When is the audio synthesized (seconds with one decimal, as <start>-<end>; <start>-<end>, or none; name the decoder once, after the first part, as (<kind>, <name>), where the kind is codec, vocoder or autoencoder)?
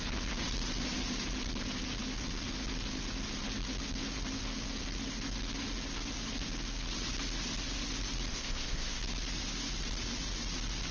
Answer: 8.3-9.0 (codec, ZipCodec)